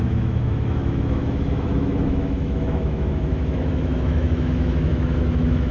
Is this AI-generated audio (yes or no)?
yes